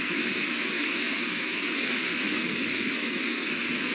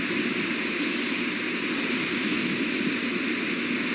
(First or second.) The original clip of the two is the second